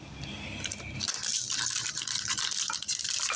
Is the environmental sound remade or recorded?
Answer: recorded